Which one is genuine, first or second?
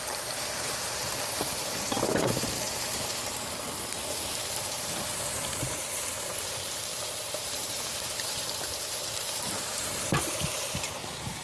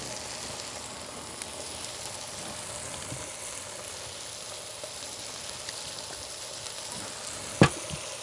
second